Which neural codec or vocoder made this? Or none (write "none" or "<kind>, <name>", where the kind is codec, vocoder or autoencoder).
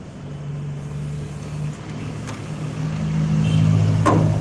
none